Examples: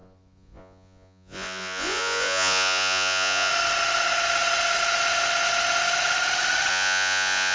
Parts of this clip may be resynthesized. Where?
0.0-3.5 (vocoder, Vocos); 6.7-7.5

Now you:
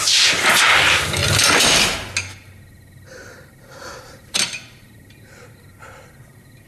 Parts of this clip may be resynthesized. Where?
1.2-2.1 (vocoder, BigVGAN v2); 3.2-5.4

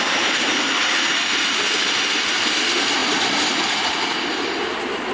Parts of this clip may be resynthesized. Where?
none

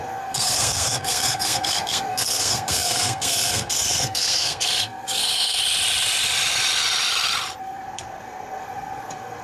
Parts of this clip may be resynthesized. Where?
0.0-5.6 (codec, SNAC); 7.6-9.4

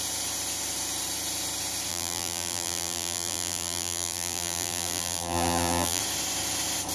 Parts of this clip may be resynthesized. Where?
1.9-6.0 (vocoder, BigVGAN v2)

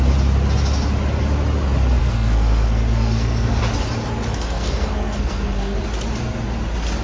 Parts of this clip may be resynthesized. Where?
2.0-3.6 (codec, SNAC); 4.3-5.8